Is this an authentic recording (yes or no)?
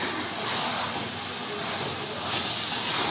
yes